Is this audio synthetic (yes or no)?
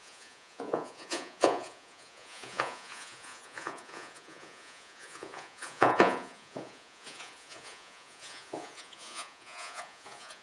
yes